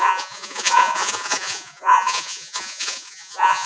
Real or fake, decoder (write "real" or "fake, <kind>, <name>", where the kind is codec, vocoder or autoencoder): fake, vocoder, Vocos